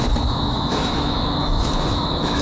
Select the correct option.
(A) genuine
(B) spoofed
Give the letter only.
B